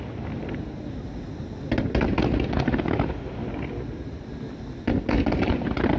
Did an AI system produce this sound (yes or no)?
no